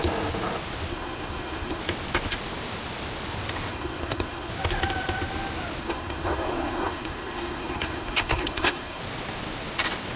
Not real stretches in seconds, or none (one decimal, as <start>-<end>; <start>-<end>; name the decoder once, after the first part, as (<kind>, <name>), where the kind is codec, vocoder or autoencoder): 0.9-1.8 (codec, SNAC); 3.7-4.5; 5.8-9.0